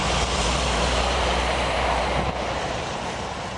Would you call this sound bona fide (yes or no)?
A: no